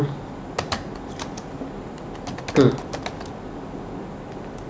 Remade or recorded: recorded